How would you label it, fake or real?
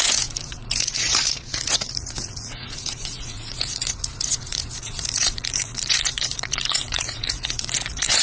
fake